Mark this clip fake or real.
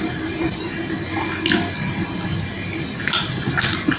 real